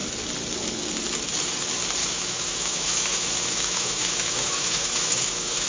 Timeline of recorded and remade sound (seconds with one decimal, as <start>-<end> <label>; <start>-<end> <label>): 0.0-2.0 recorded; 2.0-5.7 remade